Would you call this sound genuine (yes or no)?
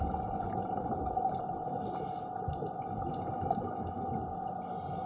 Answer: yes